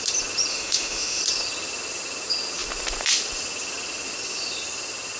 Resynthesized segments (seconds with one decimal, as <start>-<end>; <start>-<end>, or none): 0.5-1.2